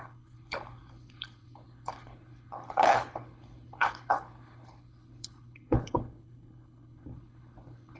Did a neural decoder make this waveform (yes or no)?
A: yes